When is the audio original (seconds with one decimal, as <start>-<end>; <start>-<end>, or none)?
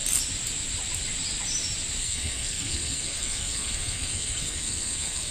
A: 0.0-2.0